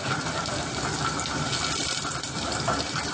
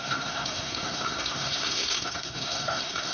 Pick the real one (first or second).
first